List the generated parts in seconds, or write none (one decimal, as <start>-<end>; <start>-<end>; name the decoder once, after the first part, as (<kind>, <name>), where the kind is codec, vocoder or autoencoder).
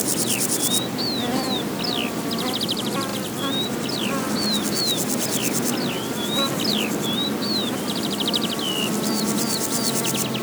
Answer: 0.0-3.1 (vocoder, BigVGAN v2); 5.9-10.4